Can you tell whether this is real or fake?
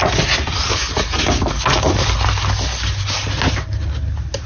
real